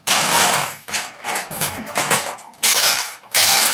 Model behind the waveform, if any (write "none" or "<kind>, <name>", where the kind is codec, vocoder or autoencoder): codec, DAC